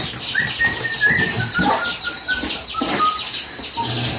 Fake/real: real